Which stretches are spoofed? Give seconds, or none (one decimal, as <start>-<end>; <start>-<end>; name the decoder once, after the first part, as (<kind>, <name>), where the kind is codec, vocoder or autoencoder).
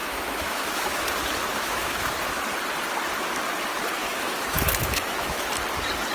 0.0-1.0 (autoencoder, DAC-VAE); 1.5-2.2; 4.0-5.5